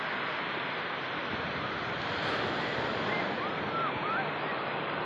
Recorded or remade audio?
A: recorded